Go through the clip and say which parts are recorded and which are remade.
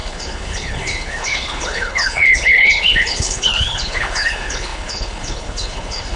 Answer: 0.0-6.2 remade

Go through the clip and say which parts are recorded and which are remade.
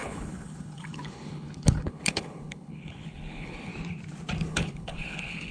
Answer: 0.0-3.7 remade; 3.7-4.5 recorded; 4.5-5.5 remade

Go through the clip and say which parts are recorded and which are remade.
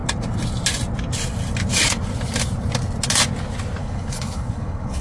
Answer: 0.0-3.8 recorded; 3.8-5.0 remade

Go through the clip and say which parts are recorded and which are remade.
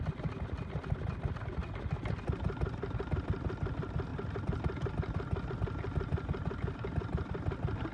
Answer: 0.0-7.9 recorded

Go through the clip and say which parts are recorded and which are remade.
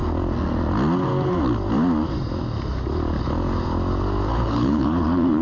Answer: 0.0-4.3 recorded; 4.3-5.4 remade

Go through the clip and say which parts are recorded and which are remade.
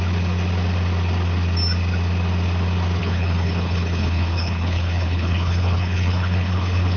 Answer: 0.0-3.0 recorded; 3.0-7.0 remade